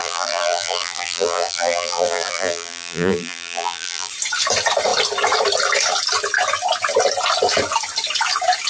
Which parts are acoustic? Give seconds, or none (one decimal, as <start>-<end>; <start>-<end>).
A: 4.1-8.7